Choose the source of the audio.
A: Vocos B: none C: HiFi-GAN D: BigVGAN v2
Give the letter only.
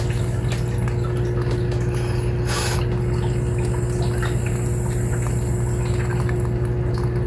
B